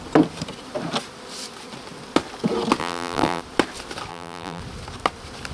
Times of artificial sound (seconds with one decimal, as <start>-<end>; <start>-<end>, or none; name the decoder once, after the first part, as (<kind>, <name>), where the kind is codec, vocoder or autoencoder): 2.8-3.4 (vocoder, BigVGAN v2); 4.1-4.6